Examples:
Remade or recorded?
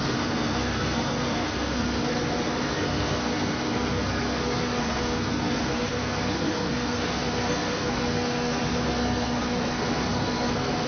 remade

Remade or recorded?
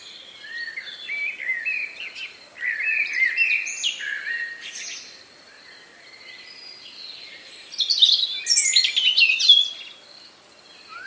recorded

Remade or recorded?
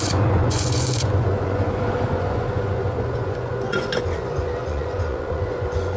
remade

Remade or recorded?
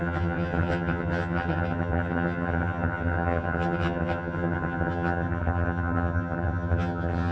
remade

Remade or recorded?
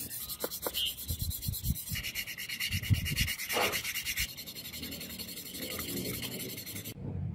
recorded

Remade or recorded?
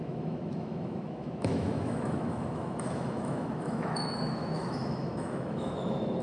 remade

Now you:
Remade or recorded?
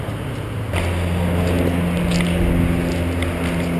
recorded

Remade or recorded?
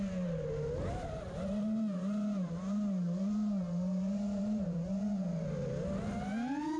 recorded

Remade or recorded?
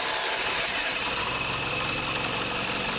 recorded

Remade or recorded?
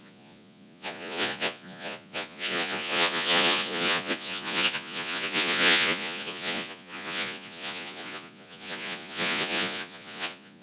remade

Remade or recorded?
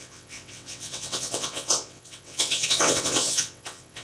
remade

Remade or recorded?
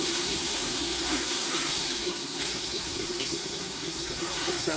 remade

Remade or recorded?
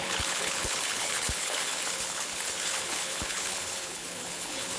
remade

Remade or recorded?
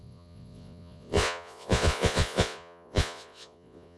remade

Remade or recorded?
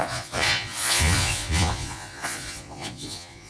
remade